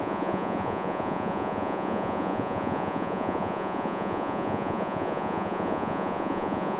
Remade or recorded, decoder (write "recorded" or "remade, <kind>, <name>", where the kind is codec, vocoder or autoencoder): remade, vocoder, Vocos